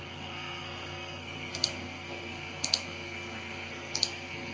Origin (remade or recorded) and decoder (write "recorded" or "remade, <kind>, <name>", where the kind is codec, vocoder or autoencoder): remade, codec, SNAC